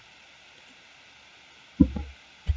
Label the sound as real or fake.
real